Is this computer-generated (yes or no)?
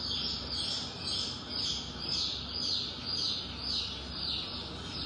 no